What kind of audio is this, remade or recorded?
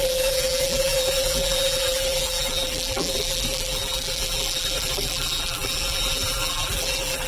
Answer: remade